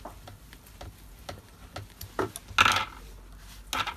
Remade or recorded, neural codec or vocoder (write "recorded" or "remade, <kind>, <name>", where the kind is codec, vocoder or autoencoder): recorded